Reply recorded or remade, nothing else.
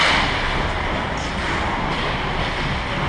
recorded